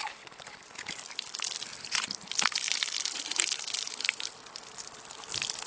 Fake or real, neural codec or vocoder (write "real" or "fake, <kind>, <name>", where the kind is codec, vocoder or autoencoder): real